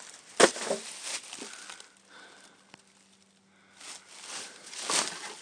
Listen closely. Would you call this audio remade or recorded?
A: recorded